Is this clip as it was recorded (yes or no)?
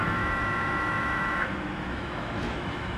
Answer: no